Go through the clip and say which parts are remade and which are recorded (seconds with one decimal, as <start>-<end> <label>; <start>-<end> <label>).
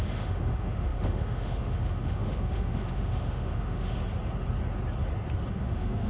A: 0.0-4.0 remade; 4.0-5.5 recorded; 5.5-6.1 remade